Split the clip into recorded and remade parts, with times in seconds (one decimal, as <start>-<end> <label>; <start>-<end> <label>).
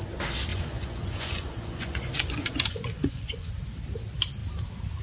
0.0-0.5 recorded; 0.5-3.5 remade; 3.5-5.0 recorded